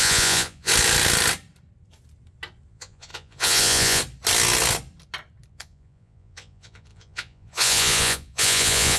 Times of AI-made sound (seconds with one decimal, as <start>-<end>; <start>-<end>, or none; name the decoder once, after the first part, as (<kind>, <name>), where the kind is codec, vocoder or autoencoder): 0.0-0.7 (vocoder, Vocos); 2.7-4.0; 5.5-9.0

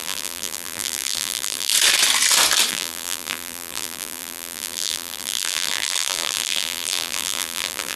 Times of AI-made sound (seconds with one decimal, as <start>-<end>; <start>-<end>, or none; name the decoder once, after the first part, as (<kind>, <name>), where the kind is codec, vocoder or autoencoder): 0.0-1.7 (vocoder, BigVGAN v2); 2.7-8.0

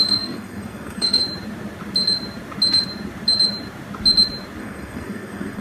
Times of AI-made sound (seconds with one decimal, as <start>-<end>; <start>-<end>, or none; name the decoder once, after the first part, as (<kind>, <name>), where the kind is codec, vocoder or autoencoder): 0.0-1.2 (codec, SNAC); 4.6-5.6

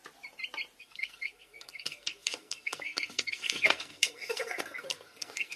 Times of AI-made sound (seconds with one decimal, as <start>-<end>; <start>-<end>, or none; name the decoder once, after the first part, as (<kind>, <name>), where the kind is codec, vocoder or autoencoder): 0.8-5.6 (codec, SNAC)

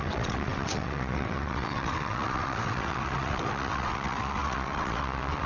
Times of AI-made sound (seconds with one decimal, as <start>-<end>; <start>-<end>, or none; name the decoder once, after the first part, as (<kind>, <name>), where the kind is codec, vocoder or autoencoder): 0.0-5.5 (vocoder, WaveNeXt)